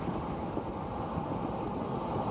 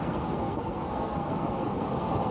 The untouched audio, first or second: first